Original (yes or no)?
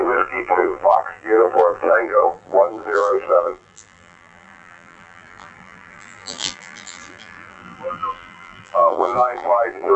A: no